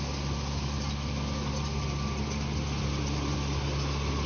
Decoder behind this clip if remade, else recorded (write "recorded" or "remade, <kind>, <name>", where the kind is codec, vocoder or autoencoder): recorded